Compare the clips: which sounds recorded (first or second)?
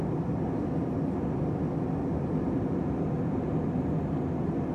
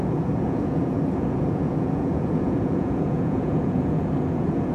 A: first